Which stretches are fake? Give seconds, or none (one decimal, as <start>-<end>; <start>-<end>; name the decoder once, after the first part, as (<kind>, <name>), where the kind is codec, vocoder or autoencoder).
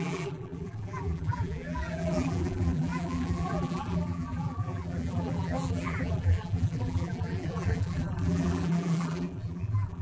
0.0-10.0 (vocoder, BigVGAN v2)